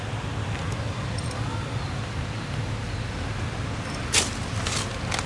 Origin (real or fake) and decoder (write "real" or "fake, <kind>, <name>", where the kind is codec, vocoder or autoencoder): real